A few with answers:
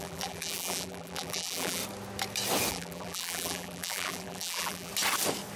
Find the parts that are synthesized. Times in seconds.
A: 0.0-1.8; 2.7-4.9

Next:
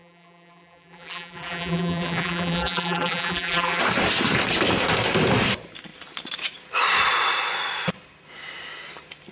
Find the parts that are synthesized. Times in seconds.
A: 0.0-3.8